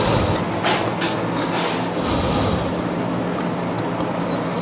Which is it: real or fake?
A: real